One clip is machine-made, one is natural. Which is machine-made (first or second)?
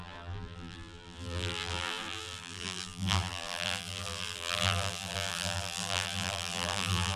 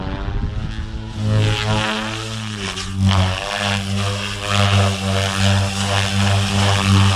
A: first